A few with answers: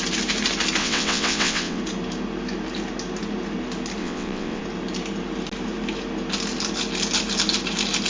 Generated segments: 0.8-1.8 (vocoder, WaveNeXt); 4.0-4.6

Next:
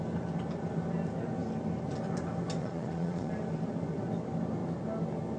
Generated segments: 2.6-3.3 (vocoder, Vocos)

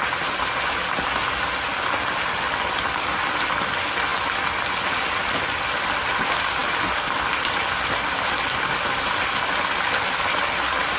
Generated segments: none

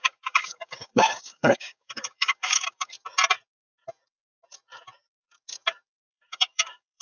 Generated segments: 0.0-2.9 (codec, DAC); 6.1-7.0

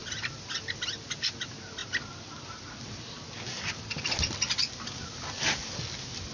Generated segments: none

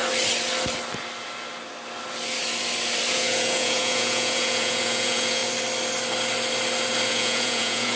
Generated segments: 3.1-5.4 (vocoder, Vocos); 7.1-8.0

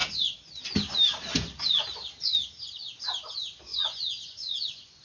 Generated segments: 3.7-5.0 (vocoder, Vocos)

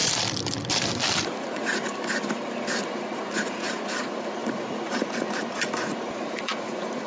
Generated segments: 1.2-1.7 (vocoder, Vocos); 2.8-7.1